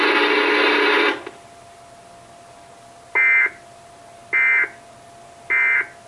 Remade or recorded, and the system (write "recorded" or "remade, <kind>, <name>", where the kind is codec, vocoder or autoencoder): recorded